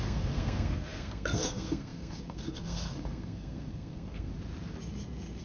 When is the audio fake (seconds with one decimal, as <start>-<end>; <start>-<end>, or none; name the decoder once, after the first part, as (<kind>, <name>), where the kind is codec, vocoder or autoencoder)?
0.0-4.3 (codec, SNAC)